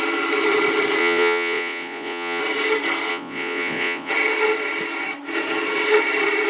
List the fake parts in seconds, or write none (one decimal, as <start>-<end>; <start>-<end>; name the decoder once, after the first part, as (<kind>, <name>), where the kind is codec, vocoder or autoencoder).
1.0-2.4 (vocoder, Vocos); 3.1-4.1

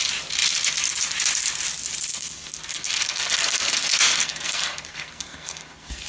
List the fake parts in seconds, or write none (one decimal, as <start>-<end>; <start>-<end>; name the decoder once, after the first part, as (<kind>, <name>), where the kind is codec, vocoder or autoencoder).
2.1-6.1 (codec, SNAC)

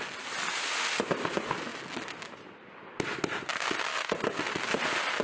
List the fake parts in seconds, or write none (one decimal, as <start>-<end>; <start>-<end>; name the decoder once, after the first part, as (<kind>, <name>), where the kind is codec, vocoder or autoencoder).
none

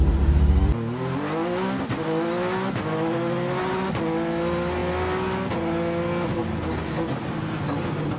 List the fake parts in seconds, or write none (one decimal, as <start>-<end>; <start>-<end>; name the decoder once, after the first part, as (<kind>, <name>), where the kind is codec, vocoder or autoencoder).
none